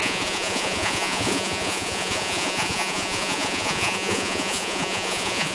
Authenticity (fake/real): fake